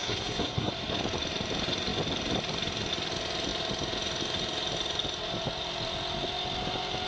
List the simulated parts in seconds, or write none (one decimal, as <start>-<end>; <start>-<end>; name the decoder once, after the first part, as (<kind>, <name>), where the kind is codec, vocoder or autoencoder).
0.0-0.7 (codec, SNAC)